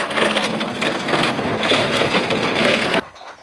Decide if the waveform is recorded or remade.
remade